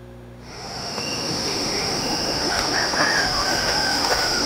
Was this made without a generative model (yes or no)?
no